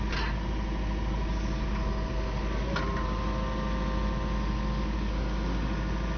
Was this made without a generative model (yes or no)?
yes